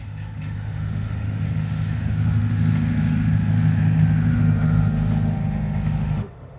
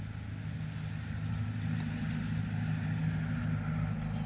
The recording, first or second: second